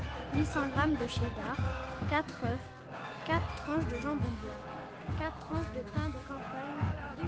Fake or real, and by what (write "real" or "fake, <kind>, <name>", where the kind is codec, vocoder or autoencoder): fake, codec, DAC